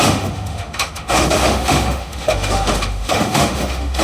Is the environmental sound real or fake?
fake